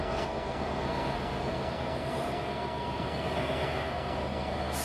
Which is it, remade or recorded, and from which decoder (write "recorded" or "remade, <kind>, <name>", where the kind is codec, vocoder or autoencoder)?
remade, codec, SNAC